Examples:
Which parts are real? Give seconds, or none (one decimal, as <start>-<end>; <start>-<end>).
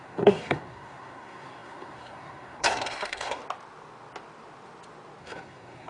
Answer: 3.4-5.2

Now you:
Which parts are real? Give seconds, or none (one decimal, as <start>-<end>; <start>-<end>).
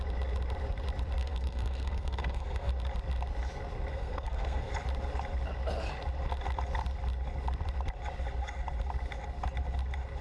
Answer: 0.0-1.2; 2.7-3.9; 4.7-10.2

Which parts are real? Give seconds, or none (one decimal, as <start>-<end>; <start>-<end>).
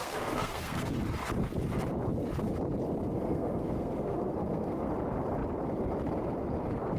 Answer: 0.9-3.1; 4.9-7.0